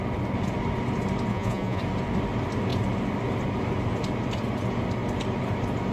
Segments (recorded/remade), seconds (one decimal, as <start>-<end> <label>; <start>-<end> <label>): 0.0-1.3 recorded; 1.3-1.8 remade; 1.8-5.9 recorded